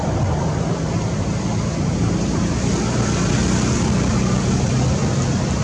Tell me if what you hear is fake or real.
fake